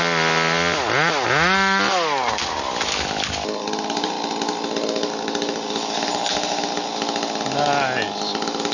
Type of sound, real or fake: real